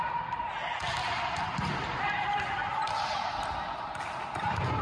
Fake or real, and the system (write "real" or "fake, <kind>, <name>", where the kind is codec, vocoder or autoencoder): real